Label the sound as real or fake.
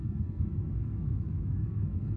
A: fake